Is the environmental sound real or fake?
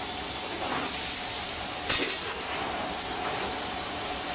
real